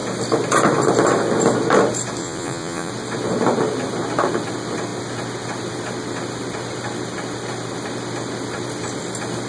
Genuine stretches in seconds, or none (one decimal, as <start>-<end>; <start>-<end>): 0.0-2.2; 2.9-9.5